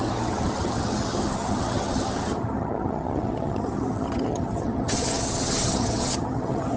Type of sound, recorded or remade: remade